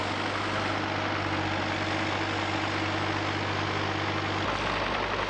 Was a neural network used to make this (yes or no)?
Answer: no